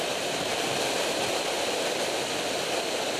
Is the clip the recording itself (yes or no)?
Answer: yes